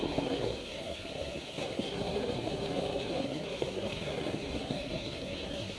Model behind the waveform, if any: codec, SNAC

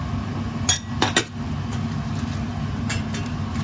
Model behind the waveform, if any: none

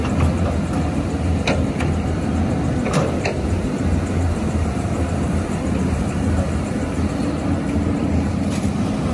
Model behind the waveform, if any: vocoder, BigVGAN v2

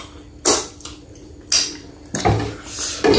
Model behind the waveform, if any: none